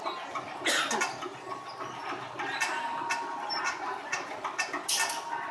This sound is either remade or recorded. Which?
recorded